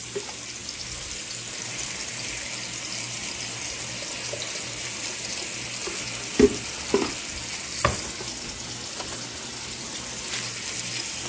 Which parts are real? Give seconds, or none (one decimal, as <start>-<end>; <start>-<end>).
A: 0.0-11.3